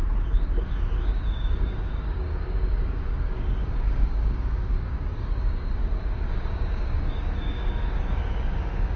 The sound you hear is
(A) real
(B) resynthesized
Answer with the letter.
B